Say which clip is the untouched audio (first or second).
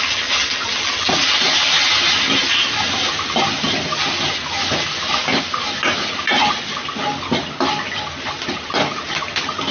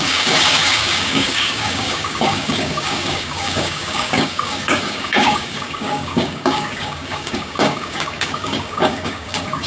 first